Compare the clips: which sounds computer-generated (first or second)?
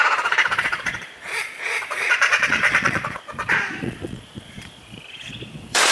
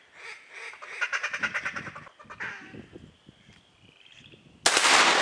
first